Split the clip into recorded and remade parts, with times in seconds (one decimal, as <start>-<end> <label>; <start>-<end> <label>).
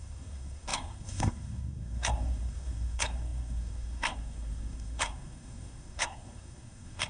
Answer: 0.0-7.1 remade